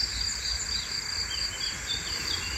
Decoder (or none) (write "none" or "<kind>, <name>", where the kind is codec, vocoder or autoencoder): none